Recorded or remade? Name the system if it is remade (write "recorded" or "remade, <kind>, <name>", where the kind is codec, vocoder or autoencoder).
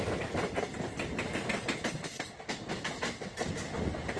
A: recorded